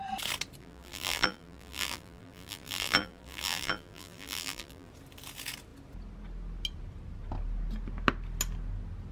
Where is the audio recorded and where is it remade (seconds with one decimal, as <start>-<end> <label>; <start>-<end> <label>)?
0.0-0.6 recorded; 0.6-4.9 remade; 4.9-9.1 recorded